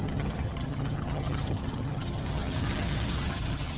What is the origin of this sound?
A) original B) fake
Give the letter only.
B